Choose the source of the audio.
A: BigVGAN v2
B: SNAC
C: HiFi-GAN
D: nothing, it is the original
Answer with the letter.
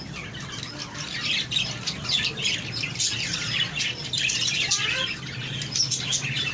D